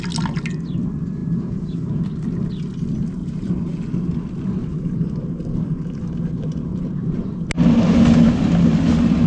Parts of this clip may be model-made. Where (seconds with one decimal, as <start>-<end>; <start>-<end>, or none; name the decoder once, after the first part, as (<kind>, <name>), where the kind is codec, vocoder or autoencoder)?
1.2-2.1 (vocoder, BigVGAN v2); 3.2-3.7; 6.7-7.3